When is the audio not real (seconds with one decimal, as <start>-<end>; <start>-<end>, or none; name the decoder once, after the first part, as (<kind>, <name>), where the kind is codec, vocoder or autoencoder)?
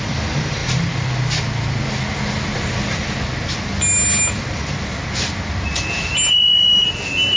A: none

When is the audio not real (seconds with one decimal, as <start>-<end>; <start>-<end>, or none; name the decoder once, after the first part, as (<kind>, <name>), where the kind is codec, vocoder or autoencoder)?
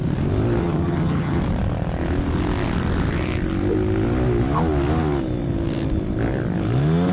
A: 0.6-1.4 (vocoder, HiFi-GAN)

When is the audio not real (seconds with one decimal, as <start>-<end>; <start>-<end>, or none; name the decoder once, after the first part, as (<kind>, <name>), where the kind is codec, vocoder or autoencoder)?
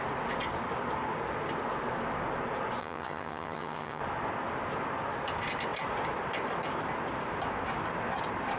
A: 2.8-4.0 (vocoder, HiFi-GAN)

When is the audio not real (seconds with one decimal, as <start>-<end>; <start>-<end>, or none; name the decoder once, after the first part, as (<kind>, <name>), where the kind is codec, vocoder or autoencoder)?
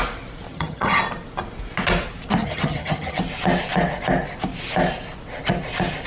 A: 0.5-1.0 (vocoder, HiFi-GAN); 2.4-3.2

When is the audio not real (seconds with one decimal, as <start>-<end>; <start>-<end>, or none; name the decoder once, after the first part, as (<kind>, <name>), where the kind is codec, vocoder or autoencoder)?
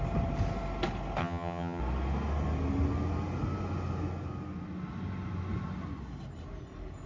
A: 1.2-1.8 (vocoder, HiFi-GAN)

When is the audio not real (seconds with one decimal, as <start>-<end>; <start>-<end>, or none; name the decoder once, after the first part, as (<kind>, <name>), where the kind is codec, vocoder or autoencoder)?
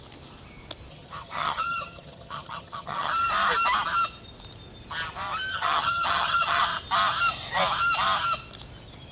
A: 0.9-3.1 (vocoder, HiFi-GAN); 5.5-6.6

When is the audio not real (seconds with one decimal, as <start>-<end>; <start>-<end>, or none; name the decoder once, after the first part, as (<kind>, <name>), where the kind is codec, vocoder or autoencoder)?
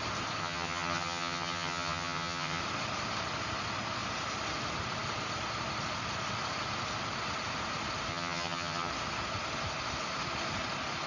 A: 0.4-2.6 (vocoder, HiFi-GAN); 8.1-8.9